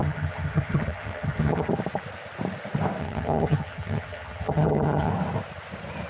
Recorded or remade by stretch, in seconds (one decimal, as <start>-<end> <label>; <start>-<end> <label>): 0.0-1.7 remade; 1.7-3.0 recorded; 3.0-5.1 remade; 5.1-6.1 recorded